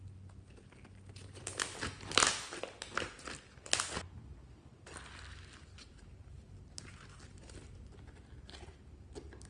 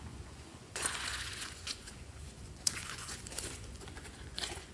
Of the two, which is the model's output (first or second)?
second